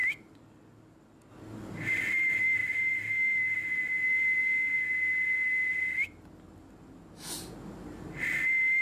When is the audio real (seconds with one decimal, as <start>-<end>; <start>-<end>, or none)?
0.0-8.8

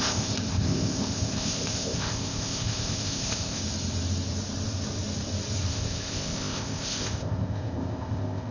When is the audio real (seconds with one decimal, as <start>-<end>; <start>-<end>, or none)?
3.6-5.7

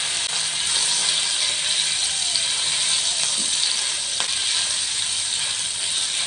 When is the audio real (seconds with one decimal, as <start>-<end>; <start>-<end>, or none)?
0.0-6.3

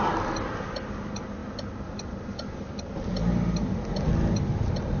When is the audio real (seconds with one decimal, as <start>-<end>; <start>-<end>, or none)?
0.0-5.0

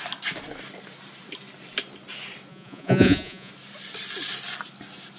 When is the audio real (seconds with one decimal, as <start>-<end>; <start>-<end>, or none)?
0.0-2.5; 3.5-5.2

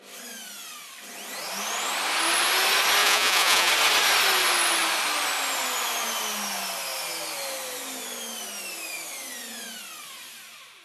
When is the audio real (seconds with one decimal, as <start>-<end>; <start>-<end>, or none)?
0.0-3.0; 3.7-10.8